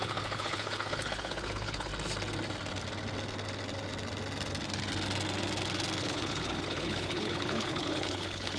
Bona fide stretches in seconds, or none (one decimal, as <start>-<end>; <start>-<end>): 1.9-6.0

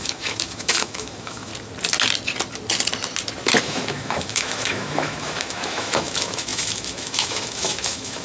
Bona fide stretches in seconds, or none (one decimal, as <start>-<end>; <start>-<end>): 1.5-3.6

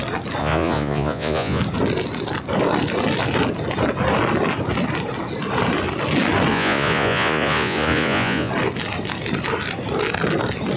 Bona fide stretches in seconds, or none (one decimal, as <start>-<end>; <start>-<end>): 0.0-0.4; 1.6-6.5; 8.5-10.8